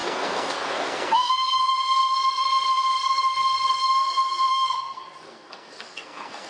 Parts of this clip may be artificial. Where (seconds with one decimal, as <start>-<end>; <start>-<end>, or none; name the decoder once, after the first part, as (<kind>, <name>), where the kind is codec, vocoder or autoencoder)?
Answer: 0.0-4.0 (codec, SNAC); 4.5-6.5